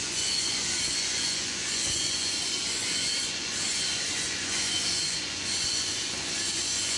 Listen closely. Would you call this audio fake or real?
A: fake